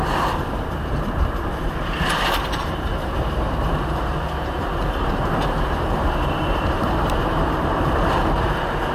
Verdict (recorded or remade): remade